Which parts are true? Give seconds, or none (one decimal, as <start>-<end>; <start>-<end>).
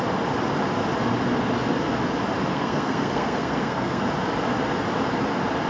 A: 0.0-2.5; 4.0-5.7